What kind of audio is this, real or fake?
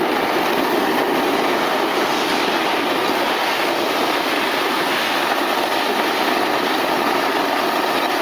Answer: real